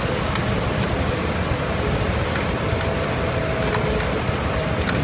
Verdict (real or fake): real